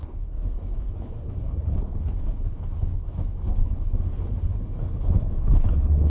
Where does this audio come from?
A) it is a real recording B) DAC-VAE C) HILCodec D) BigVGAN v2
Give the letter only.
C